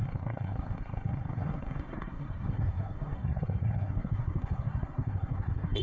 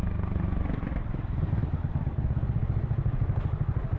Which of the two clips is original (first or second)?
second